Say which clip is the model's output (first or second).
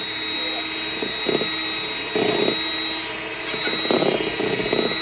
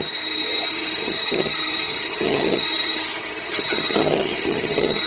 second